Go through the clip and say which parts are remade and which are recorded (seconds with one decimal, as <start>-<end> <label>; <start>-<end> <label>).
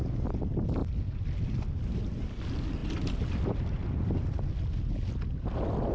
0.0-5.9 recorded